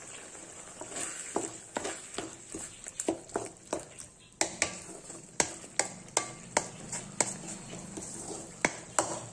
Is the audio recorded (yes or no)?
yes